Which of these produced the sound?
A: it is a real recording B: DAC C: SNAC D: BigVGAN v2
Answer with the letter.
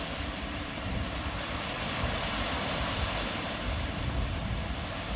D